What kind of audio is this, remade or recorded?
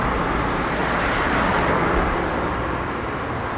recorded